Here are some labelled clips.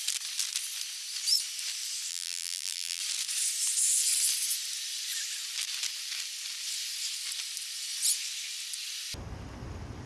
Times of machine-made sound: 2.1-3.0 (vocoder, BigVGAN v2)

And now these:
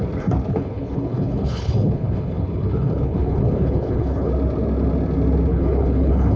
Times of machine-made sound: 0.5-4.3 (codec, HILCodec); 5.5-6.4

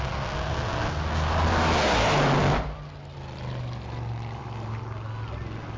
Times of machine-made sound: none

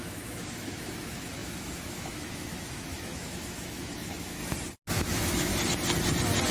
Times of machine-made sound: 0.0-4.4 (autoencoder, DAC-VAE); 4.9-5.5